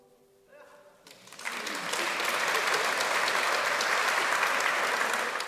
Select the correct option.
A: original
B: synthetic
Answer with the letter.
A